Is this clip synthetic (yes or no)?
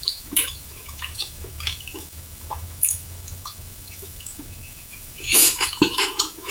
yes